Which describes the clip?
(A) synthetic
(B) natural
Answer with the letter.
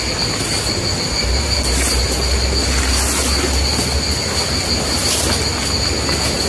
B